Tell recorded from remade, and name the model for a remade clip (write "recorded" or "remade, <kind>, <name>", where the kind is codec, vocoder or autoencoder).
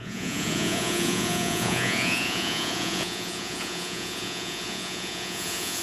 remade, vocoder, Vocos